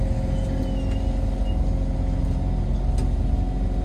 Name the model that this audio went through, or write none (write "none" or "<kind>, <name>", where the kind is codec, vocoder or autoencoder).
none